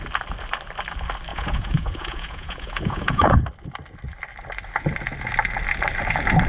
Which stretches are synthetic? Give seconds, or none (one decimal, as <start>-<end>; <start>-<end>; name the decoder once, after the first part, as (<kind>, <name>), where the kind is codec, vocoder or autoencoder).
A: 1.3-3.4 (vocoder, Vocos)